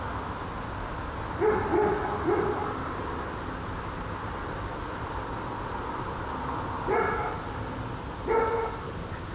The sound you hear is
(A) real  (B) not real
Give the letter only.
A